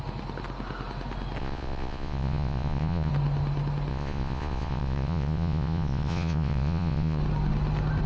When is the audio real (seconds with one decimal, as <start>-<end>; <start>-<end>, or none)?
0.0-1.4; 3.1-3.9; 7.2-8.1